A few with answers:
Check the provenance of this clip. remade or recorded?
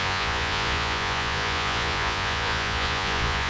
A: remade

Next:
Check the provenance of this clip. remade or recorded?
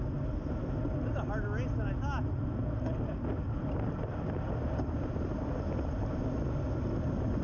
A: recorded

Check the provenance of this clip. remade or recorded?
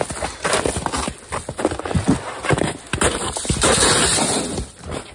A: recorded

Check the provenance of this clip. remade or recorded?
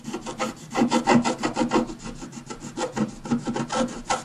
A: recorded